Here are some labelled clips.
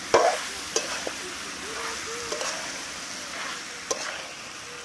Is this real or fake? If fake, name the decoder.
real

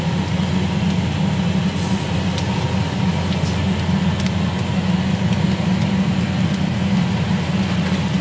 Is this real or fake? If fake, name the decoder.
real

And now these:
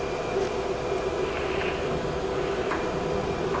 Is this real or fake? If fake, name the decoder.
real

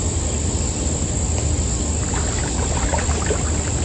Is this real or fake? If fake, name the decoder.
real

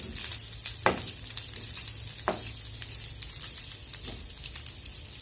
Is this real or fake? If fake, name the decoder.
real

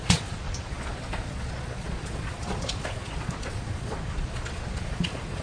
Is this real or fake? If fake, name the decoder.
fake, vocoder, Vocos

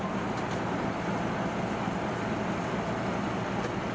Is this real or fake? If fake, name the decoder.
real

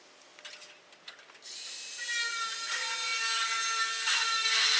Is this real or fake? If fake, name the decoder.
real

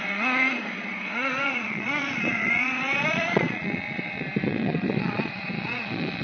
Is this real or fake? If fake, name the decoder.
fake, vocoder, Vocos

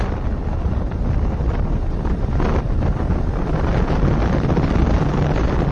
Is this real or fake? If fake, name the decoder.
real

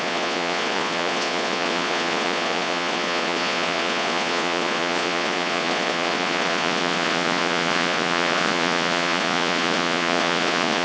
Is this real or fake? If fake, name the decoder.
fake, vocoder, Vocos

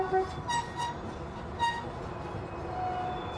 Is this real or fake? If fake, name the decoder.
real